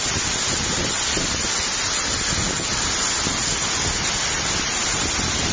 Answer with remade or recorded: recorded